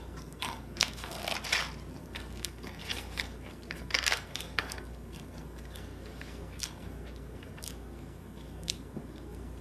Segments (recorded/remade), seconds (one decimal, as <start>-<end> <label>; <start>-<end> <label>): 0.0-1.2 remade; 1.2-1.9 recorded; 1.9-9.6 remade